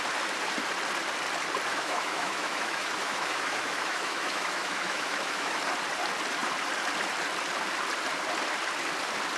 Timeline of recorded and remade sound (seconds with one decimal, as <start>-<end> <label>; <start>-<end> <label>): 0.0-1.7 recorded; 1.7-5.6 remade; 5.6-9.4 recorded